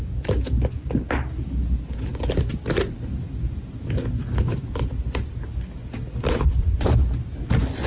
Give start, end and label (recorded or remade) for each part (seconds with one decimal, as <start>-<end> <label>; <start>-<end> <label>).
0.0-7.9 recorded